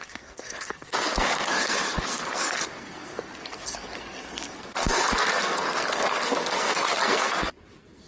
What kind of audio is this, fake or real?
fake